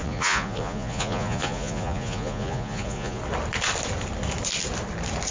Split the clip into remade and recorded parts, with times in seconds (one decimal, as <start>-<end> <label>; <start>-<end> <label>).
0.0-3.2 remade; 3.2-5.3 recorded